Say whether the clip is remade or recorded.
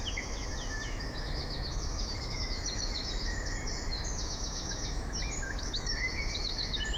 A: remade